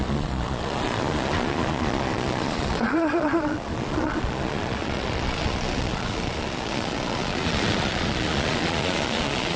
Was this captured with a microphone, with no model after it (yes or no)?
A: no